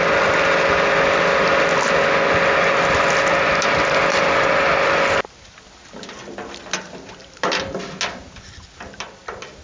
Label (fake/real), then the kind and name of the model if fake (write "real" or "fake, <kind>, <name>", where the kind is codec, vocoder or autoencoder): real